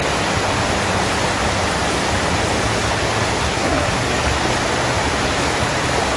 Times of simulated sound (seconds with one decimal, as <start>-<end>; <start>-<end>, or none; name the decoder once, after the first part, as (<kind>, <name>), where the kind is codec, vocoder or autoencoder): 3.4-4.0 (codec, SNAC)